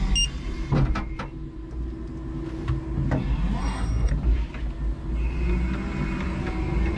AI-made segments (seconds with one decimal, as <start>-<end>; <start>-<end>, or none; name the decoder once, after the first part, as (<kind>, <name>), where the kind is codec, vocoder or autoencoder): 3.6-4.1 (codec, SNAC)